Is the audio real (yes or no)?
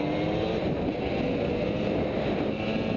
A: yes